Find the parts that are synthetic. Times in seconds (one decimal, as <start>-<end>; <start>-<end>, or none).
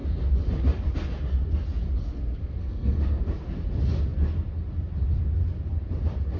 2.0-3.2